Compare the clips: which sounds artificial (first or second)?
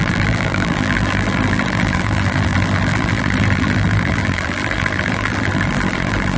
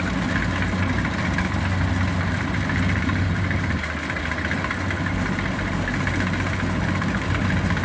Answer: first